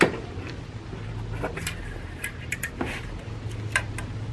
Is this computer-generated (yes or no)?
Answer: no